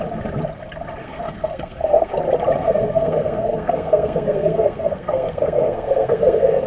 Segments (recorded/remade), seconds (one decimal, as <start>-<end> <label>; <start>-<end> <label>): 0.0-1.0 recorded; 1.0-2.1 remade; 2.1-2.6 recorded; 2.6-6.7 remade

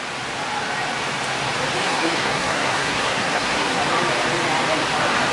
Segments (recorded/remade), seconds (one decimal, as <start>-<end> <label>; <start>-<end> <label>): 0.0-1.8 recorded; 1.8-3.8 remade; 3.8-5.3 recorded

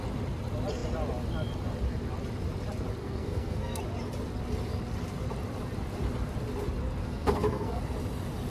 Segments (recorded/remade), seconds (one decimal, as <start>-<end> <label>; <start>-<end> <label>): 0.0-3.0 recorded; 3.0-3.8 remade; 3.8-7.0 recorded; 7.0-7.8 remade; 7.8-8.5 recorded

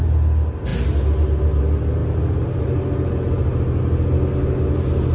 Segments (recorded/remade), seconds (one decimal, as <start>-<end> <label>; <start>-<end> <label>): 0.0-5.1 recorded

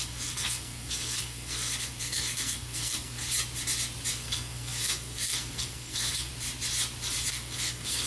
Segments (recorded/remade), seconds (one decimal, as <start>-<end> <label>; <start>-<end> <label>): 0.0-3.2 remade; 3.2-4.1 recorded; 4.1-6.3 remade; 6.3-7.3 recorded; 7.3-8.1 remade

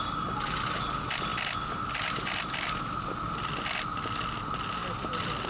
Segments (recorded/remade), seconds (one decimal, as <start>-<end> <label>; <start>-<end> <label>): 0.0-5.5 recorded